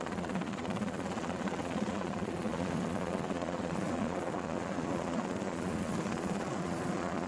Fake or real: fake